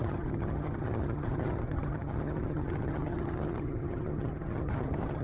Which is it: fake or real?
fake